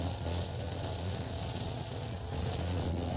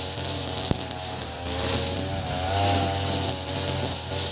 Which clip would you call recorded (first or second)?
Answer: second